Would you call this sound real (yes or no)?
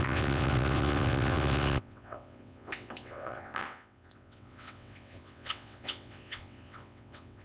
no